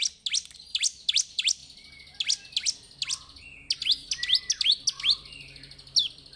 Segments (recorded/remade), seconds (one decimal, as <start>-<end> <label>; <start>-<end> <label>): 0.0-6.4 recorded